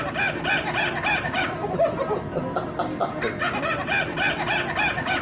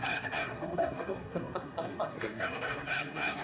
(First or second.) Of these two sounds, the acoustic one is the first